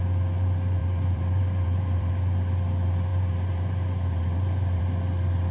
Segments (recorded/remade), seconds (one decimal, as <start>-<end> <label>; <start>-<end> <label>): 0.0-0.8 recorded; 0.8-2.1 remade; 2.1-3.1 recorded; 3.1-4.8 remade; 4.8-5.5 recorded